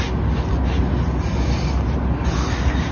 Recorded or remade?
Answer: recorded